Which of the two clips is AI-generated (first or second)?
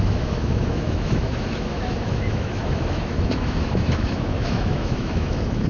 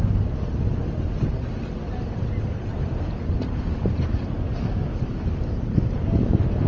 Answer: first